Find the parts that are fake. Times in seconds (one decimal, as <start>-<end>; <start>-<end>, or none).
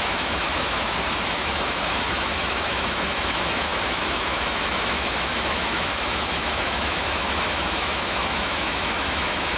0.0-9.6